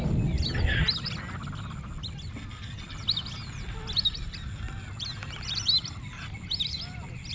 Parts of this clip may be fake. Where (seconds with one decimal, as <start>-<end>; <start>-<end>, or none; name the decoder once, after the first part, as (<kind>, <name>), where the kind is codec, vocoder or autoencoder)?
none

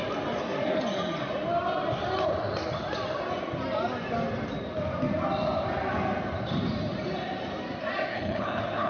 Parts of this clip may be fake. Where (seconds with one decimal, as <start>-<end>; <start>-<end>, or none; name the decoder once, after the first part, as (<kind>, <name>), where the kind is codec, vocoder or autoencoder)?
8.1-8.9 (codec, HILCodec)

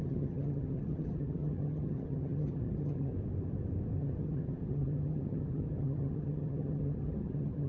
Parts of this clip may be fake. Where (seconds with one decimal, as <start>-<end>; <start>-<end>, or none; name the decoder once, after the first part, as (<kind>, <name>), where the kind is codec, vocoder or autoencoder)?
0.0-3.1 (vocoder, HiFi-GAN); 4.0-7.7

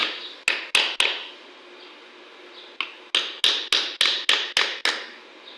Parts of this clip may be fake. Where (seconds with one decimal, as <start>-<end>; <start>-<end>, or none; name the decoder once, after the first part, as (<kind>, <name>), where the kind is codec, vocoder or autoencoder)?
none

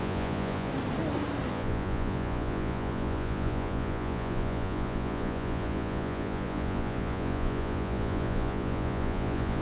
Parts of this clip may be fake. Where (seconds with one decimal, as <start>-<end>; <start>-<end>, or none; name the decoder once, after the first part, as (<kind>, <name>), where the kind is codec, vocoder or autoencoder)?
0.0-0.7 (vocoder, Vocos); 1.5-9.6

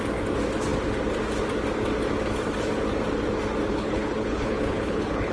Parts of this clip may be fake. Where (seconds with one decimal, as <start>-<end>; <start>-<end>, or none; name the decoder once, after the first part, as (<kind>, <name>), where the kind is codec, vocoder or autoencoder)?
3.7-5.3 (codec, HILCodec)